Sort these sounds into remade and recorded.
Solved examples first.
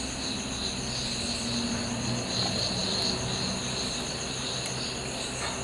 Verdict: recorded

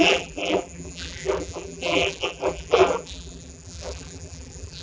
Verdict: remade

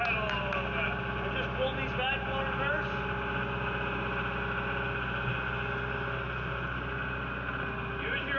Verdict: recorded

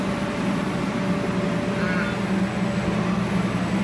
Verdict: recorded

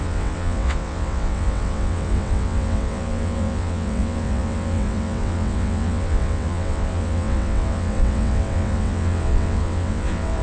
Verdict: remade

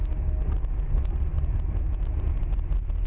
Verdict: recorded